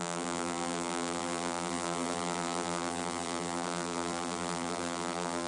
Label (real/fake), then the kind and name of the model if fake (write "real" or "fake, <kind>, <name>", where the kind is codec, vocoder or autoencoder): fake, vocoder, BigVGAN v2